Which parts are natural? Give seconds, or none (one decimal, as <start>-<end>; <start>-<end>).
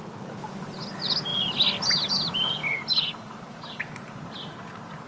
0.0-1.3; 2.1-2.6; 4.1-5.1